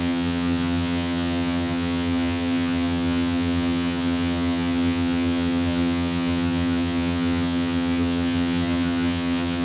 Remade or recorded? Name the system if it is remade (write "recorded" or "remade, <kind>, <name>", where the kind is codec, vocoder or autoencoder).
remade, vocoder, HiFi-GAN